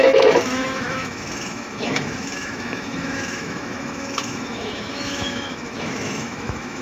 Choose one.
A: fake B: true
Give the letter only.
A